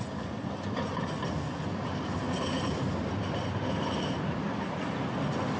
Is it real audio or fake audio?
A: real